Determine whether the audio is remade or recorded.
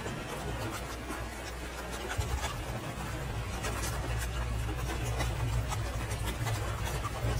recorded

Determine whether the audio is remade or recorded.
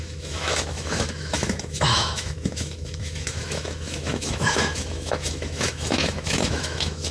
remade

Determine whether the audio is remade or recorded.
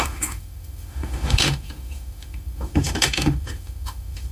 remade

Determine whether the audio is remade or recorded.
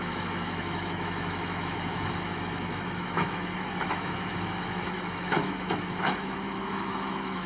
remade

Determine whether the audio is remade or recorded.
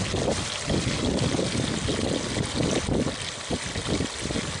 recorded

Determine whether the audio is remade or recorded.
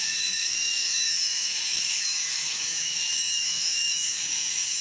remade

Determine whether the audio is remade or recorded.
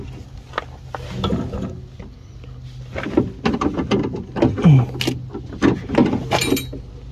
recorded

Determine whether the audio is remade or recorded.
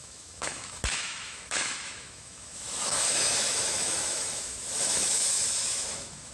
remade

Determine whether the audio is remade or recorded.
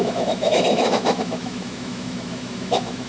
remade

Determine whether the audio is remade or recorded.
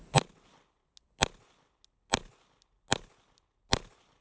recorded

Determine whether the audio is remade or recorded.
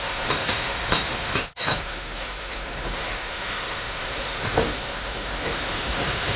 remade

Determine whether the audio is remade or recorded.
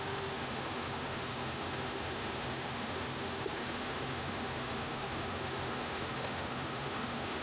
remade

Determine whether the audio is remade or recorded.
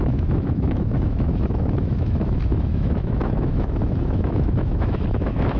remade